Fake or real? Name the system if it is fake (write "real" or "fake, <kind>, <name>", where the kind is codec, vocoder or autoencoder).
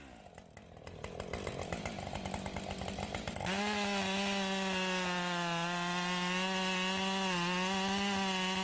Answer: real